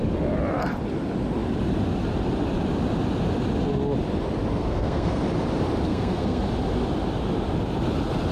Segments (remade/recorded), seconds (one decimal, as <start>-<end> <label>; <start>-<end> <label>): 0.0-4.6 recorded; 4.6-5.2 remade; 5.2-5.9 recorded; 5.9-6.4 remade; 6.4-8.3 recorded